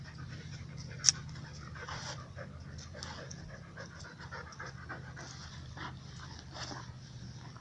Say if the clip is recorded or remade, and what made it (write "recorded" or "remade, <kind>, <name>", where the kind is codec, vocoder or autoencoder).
recorded